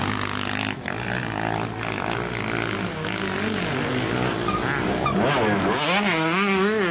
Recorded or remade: recorded